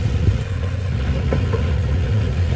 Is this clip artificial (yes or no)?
yes